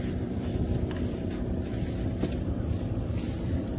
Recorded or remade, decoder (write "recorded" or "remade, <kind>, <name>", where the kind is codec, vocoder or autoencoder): remade, vocoder, BigVGAN v2